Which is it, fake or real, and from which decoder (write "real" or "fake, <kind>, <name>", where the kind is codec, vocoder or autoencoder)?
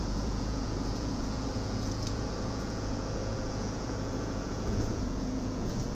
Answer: fake, vocoder, Vocos